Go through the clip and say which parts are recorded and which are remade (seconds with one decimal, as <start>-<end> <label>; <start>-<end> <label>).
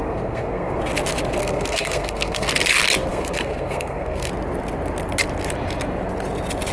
0.0-0.8 remade; 0.8-1.4 recorded; 1.4-2.5 remade; 2.5-3.1 recorded; 3.1-4.3 remade; 4.3-6.7 recorded